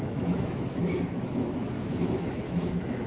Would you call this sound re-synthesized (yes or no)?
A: yes